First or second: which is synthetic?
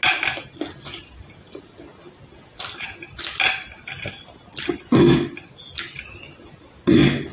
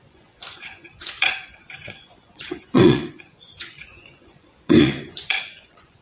second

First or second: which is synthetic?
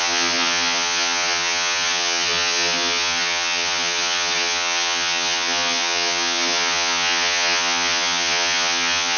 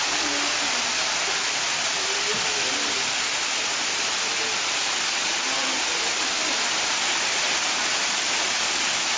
first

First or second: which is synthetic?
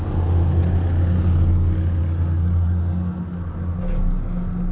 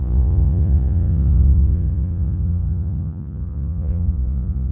second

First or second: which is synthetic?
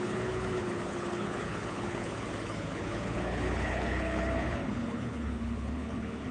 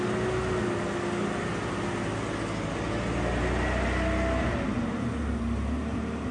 first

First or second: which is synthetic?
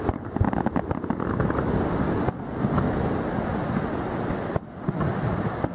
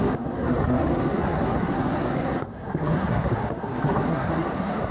second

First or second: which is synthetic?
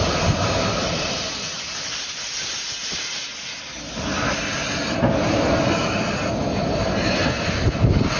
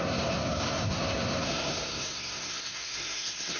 second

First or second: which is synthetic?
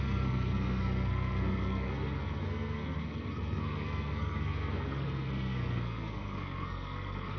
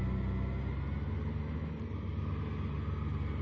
first